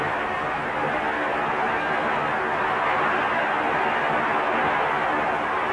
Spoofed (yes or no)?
no